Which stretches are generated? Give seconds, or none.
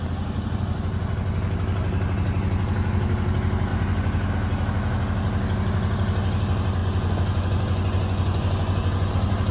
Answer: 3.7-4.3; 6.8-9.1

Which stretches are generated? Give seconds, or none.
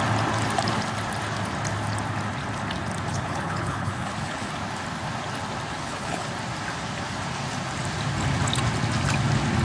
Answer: 3.1-4.5; 5.7-6.3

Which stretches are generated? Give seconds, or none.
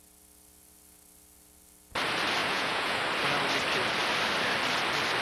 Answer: 2.4-3.0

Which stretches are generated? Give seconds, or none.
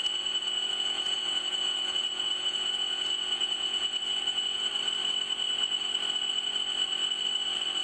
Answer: 0.0-4.7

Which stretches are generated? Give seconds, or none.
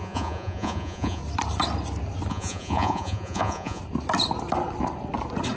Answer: 0.0-1.2; 2.3-3.8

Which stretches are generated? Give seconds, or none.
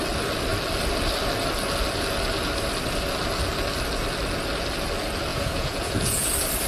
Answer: 5.3-6.3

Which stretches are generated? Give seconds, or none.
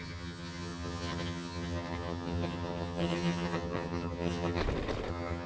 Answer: 0.0-4.6; 5.1-5.5